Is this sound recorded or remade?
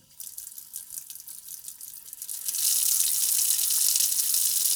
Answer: recorded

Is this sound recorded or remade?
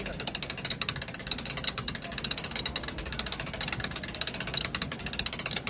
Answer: recorded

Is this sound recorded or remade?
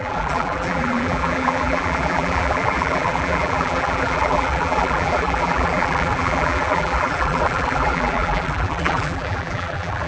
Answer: remade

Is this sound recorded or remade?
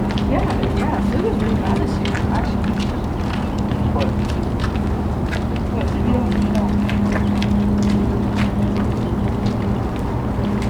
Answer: recorded